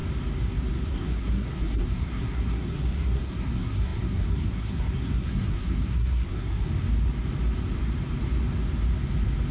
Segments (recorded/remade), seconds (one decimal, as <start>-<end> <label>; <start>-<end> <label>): 0.0-0.9 recorded; 0.9-6.7 remade; 6.7-9.5 recorded